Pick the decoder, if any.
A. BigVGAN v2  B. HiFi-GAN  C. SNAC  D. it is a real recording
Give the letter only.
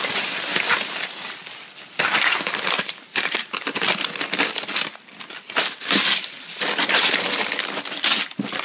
D